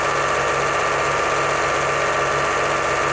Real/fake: real